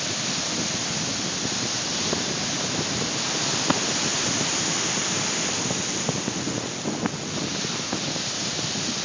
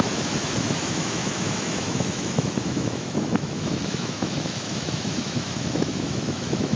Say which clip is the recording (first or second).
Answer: first